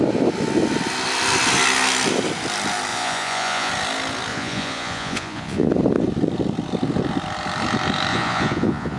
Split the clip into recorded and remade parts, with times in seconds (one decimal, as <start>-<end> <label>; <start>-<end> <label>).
0.0-2.9 recorded; 2.9-3.7 remade; 3.7-4.3 recorded; 4.3-5.7 remade; 5.7-8.1 recorded; 8.1-9.0 remade